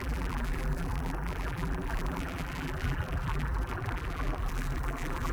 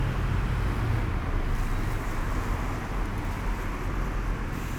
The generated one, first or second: first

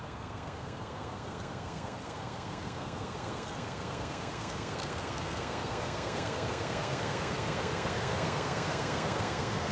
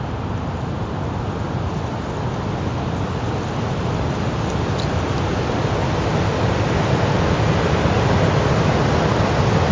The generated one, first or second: first